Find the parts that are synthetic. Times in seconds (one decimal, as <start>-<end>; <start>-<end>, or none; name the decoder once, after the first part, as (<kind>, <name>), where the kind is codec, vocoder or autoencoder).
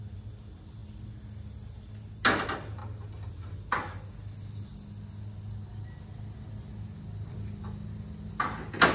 none